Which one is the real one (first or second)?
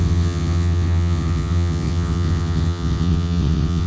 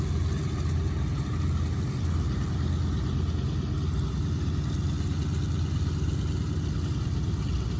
second